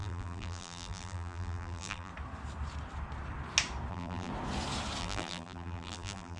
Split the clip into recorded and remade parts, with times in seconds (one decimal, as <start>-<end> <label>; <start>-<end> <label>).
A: 0.0-2.1 remade; 2.1-3.9 recorded; 3.9-4.3 remade; 4.3-5.0 recorded; 5.0-6.4 remade